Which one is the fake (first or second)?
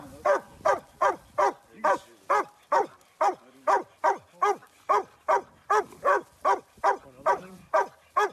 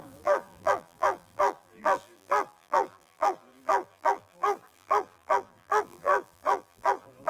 second